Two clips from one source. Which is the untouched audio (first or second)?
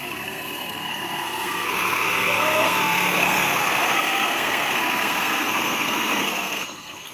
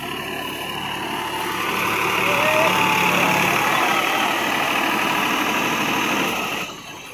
second